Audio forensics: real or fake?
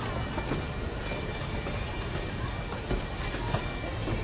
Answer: real